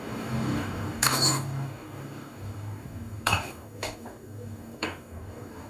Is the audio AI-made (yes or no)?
yes